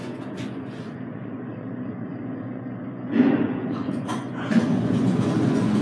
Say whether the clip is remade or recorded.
remade